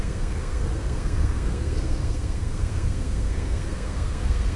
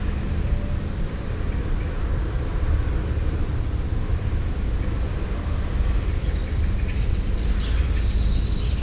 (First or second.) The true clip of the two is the second